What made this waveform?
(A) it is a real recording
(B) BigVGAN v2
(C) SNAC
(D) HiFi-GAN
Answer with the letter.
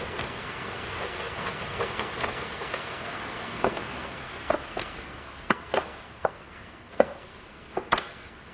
C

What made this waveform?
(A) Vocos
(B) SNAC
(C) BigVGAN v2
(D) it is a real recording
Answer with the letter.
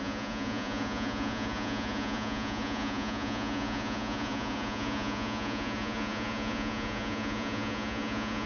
A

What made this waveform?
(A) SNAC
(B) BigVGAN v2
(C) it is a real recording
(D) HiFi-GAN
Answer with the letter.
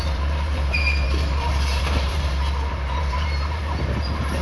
B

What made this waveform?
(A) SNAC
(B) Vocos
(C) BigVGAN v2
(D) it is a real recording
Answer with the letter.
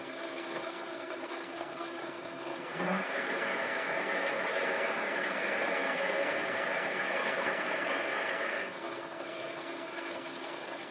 A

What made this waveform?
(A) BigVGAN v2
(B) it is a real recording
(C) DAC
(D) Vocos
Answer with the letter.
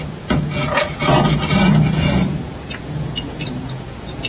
D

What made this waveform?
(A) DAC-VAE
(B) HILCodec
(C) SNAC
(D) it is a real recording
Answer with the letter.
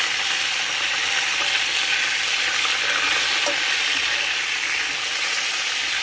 D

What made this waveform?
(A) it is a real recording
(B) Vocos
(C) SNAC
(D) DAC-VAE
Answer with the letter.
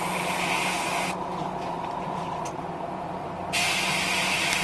A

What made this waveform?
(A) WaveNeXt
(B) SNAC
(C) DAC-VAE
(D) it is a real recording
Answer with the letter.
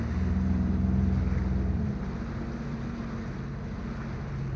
D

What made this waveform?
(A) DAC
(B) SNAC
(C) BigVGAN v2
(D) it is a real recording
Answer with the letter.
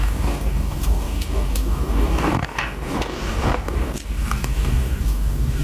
A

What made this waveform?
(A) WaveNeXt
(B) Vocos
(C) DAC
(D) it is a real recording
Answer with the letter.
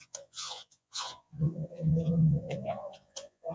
B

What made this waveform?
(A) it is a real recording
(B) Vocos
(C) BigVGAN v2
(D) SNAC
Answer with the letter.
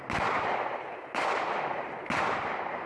A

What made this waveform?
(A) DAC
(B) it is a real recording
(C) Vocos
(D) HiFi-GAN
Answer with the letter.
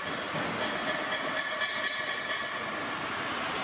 B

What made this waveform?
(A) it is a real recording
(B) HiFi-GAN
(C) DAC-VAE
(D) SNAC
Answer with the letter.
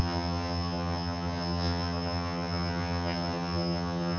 B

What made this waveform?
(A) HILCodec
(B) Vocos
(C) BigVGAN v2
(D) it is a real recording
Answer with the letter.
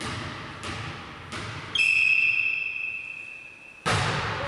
D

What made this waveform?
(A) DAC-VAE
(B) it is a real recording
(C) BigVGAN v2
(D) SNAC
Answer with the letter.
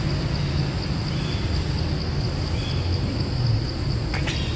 B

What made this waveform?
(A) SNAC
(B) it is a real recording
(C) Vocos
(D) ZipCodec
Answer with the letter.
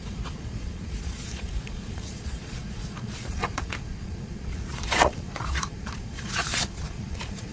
C